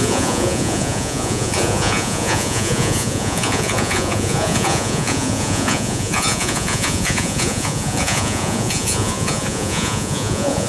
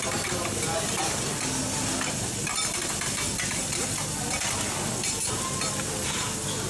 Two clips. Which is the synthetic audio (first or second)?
first